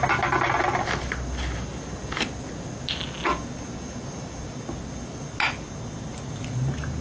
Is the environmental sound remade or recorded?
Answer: recorded